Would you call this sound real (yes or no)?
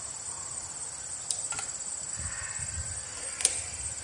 yes